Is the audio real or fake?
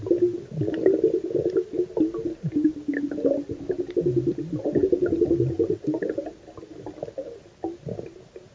real